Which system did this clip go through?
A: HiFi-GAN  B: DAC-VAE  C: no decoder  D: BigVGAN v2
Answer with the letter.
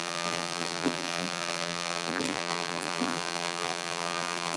D